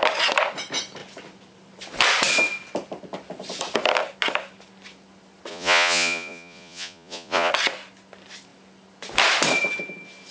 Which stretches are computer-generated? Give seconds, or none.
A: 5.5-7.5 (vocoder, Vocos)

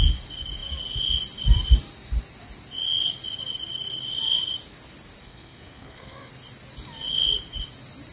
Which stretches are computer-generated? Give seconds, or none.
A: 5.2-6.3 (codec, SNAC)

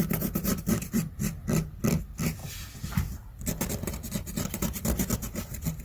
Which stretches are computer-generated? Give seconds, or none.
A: none